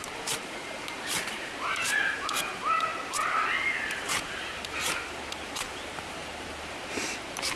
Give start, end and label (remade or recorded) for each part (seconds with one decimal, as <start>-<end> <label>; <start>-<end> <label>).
0.0-2.9 remade; 2.9-4.0 recorded; 4.0-6.2 remade; 6.2-6.8 recorded; 6.8-7.6 remade